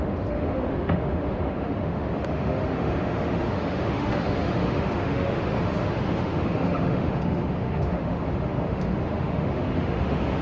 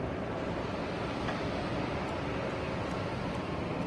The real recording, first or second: second